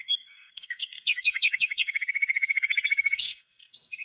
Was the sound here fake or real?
fake